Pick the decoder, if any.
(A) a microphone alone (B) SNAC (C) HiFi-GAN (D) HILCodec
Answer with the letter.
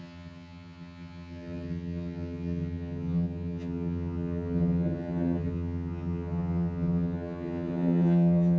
C